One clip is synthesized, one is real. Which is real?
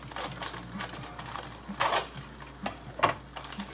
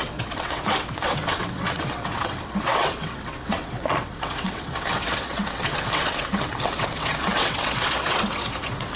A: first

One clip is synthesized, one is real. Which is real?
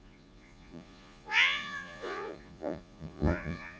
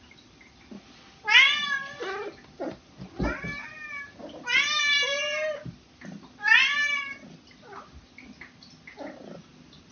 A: second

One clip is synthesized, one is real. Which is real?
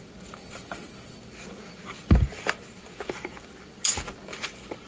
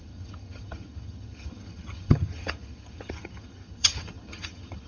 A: first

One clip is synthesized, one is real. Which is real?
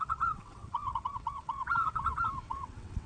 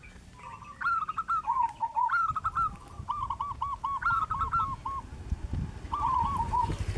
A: second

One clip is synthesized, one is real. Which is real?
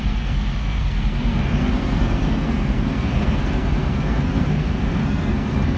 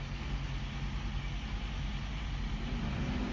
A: second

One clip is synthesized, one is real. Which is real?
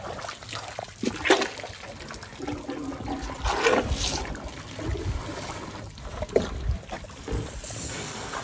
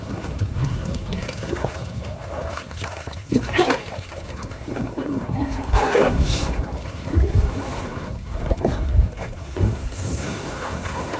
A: first